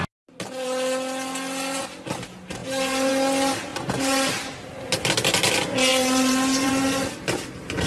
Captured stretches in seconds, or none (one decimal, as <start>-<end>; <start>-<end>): 0.0-3.7; 4.7-5.9; 6.7-7.9